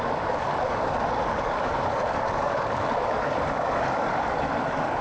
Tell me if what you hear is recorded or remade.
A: remade